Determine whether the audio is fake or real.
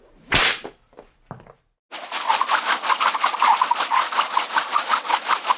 real